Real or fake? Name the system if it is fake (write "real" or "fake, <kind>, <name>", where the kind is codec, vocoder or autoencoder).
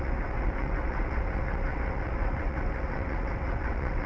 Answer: fake, vocoder, WaveNeXt